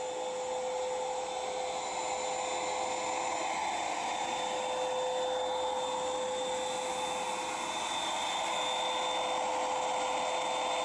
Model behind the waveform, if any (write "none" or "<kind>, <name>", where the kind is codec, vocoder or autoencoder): none